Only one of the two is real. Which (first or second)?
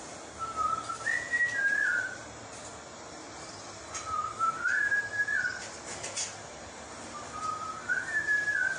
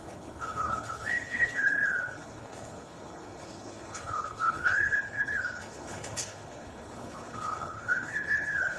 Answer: first